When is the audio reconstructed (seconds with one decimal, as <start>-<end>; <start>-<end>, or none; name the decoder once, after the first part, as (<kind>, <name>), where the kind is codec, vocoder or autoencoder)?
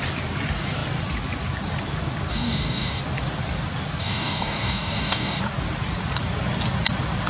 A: 2.3-3.0 (codec, DAC); 4.0-5.4